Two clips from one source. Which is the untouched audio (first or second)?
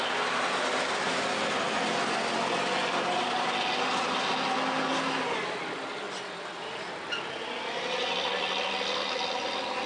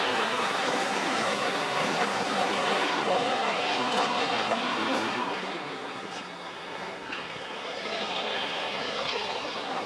first